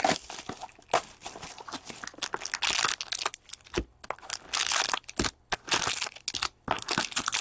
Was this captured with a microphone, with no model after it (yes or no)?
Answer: yes